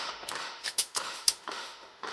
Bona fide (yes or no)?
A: no